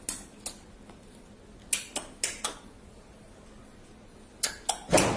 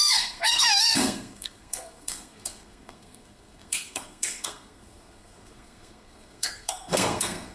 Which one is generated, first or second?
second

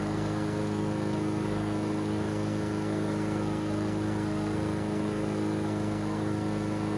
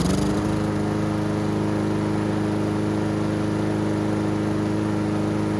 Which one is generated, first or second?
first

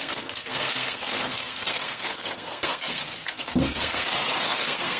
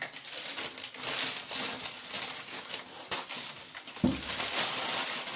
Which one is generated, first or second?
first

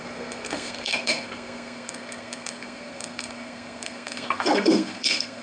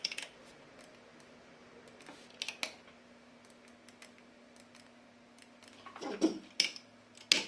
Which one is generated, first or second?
first